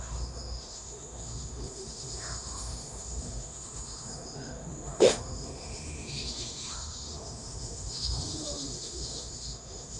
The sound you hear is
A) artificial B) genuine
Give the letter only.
A